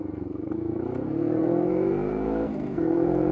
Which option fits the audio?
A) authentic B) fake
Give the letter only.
B